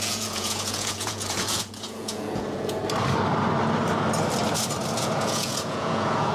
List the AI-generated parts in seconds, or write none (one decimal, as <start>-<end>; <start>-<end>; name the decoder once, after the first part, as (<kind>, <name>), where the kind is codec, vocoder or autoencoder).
0.0-2.8 (vocoder, Vocos); 4.9-6.3